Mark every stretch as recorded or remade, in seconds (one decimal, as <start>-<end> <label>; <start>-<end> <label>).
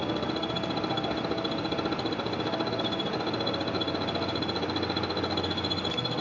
0.0-6.2 recorded